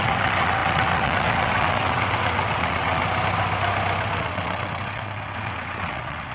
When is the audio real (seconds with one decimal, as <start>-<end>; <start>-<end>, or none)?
3.0-4.0

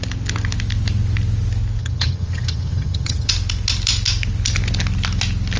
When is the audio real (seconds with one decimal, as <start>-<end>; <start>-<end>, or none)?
0.0-1.8; 3.3-5.6

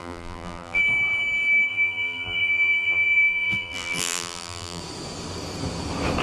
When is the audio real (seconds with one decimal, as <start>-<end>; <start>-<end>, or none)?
0.8-1.7; 4.8-6.2

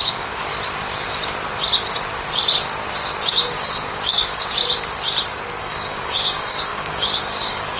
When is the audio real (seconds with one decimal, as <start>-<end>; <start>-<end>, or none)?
0.4-3.3; 4.6-5.6

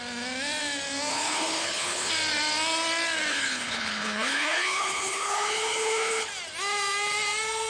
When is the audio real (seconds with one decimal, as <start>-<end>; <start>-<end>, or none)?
0.0-1.1; 2.1-3.3; 6.3-7.7

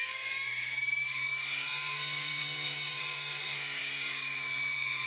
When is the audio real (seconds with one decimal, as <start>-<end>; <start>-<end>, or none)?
none